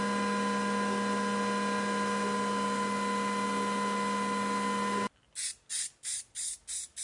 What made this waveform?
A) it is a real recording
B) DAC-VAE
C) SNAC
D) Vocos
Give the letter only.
A